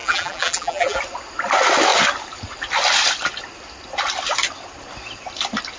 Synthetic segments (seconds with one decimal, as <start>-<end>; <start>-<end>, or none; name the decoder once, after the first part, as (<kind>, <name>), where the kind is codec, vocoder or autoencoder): 0.0-1.0 (vocoder, BigVGAN v2)

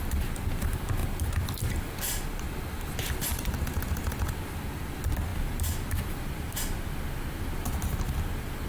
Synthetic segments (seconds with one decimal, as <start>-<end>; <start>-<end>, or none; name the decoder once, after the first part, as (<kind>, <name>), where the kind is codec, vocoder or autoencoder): none

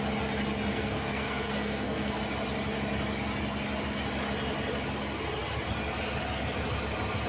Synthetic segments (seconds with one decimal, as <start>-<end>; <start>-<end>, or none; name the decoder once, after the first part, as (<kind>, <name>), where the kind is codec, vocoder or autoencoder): 0.7-2.2 (codec, SNAC)